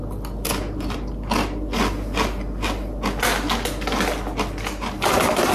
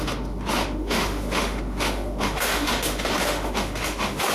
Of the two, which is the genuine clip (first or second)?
first